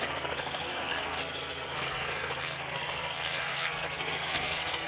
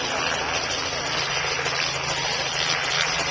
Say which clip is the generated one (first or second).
first